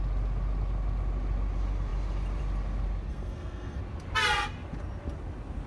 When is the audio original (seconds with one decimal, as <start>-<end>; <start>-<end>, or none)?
0.0-3.1; 3.8-5.7

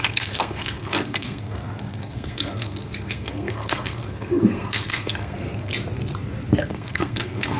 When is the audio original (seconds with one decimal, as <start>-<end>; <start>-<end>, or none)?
5.7-6.6